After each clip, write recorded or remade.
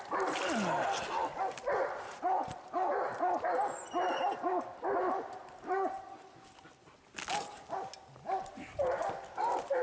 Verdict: recorded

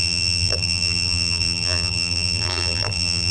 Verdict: remade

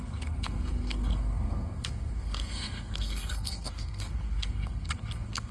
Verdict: remade